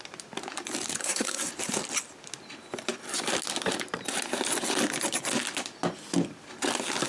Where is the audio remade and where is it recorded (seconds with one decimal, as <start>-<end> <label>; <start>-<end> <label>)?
0.0-1.0 recorded; 1.0-1.5 remade; 1.5-7.1 recorded